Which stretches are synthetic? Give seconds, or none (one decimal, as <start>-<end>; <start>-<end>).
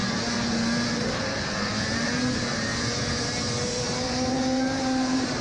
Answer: 0.9-5.4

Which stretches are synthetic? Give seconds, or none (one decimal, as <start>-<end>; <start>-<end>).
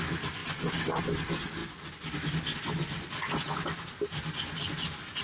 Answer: none